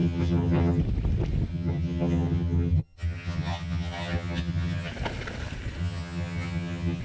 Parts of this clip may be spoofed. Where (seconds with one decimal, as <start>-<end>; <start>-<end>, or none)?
0.0-0.8; 1.5-4.9; 5.8-7.0